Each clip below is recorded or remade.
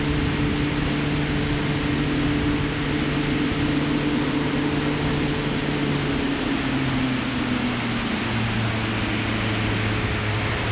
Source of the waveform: recorded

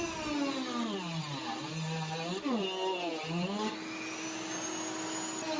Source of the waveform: recorded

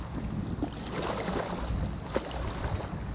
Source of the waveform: recorded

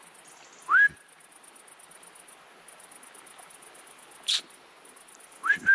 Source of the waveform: recorded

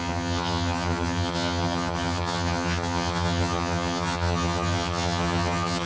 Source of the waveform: remade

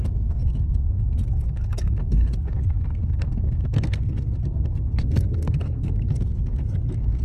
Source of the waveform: remade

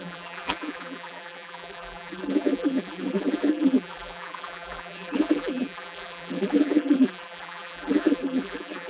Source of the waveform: remade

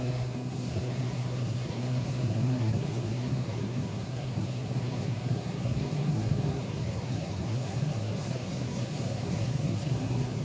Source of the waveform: remade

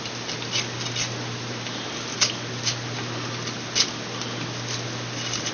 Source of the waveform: recorded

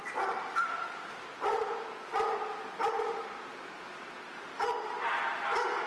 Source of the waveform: recorded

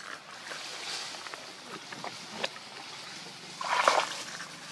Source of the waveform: recorded